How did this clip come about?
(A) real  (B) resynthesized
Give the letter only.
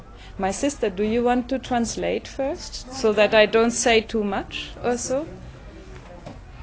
A